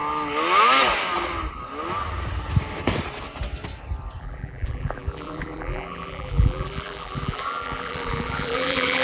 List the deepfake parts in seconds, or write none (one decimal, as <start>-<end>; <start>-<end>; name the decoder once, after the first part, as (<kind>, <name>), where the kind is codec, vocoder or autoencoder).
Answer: 4.2-9.0 (vocoder, BigVGAN v2)